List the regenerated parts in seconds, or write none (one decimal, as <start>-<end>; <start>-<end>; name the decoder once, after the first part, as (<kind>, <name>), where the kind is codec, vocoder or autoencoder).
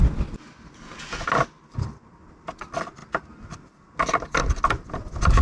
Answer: none